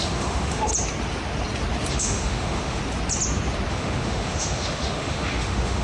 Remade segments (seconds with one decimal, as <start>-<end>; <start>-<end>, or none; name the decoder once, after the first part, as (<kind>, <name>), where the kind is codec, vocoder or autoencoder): 0.0-0.7 (autoencoder, DAC-VAE); 1.9-2.8; 3.7-5.8